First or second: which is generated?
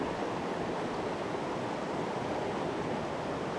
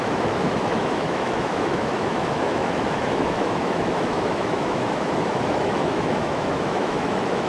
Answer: second